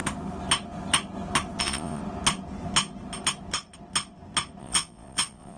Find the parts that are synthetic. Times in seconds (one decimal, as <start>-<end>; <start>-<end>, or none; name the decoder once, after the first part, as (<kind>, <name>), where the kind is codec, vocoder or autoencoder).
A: 1.6-2.0 (vocoder, Vocos); 4.6-5.6